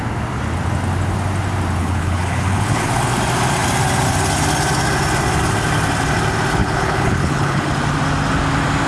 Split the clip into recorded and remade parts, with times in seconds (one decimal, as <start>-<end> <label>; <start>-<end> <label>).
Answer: 0.0-1.8 recorded; 1.8-2.9 remade; 2.9-6.6 recorded; 6.6-7.7 remade; 7.7-8.9 recorded

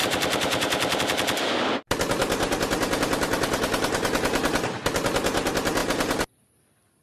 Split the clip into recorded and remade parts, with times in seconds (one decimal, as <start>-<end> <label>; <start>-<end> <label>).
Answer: 0.0-1.0 remade; 1.0-2.2 recorded; 2.2-3.0 remade; 3.0-5.8 recorded; 5.8-6.6 remade; 6.6-7.0 recorded

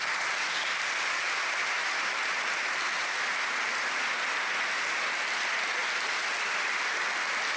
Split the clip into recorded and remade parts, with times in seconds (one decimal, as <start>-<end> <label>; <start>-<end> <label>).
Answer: 0.0-7.6 recorded

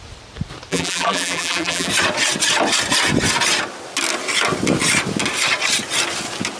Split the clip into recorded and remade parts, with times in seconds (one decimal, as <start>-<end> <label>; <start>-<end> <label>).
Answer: 0.0-0.7 recorded; 0.7-1.9 remade; 1.9-6.6 recorded

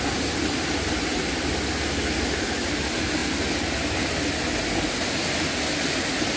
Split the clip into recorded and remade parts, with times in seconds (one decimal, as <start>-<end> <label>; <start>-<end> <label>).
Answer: 0.0-6.4 recorded

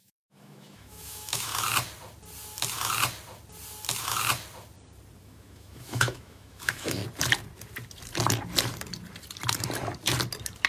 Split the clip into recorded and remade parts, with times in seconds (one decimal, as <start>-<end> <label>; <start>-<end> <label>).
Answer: 0.0-1.5 remade; 1.5-5.2 recorded; 5.2-7.0 remade; 7.0-10.7 recorded